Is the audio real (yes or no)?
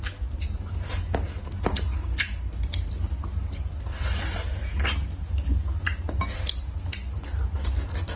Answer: yes